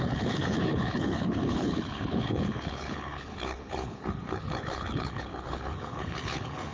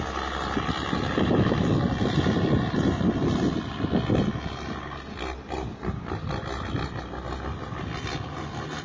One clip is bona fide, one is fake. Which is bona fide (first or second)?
second